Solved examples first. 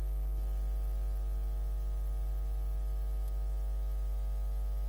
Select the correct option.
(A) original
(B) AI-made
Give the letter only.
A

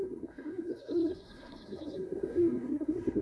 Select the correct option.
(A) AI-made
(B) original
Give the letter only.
A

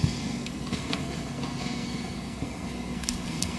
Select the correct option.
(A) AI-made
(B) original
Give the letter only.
A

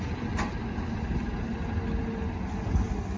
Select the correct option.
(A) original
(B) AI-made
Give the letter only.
A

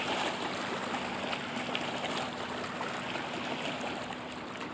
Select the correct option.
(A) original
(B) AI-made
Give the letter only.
A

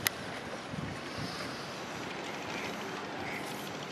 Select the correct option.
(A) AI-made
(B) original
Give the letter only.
B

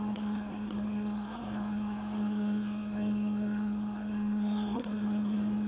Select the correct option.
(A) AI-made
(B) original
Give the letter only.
A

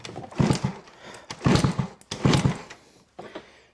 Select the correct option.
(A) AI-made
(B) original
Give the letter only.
B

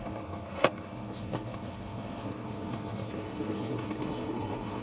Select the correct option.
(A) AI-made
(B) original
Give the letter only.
A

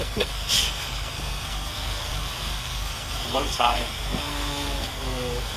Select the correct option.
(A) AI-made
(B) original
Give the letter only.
A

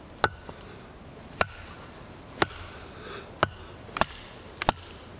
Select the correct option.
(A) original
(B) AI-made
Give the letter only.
A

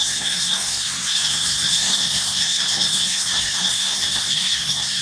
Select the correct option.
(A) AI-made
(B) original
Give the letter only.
A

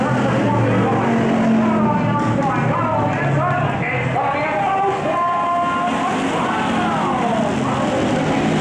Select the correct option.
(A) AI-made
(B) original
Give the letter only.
B